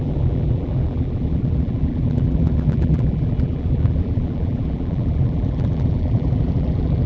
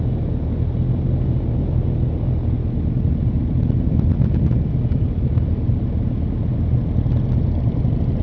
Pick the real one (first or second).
second